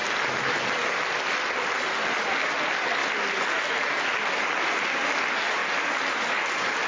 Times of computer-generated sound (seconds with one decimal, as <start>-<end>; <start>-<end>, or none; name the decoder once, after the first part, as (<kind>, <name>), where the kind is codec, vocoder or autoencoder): none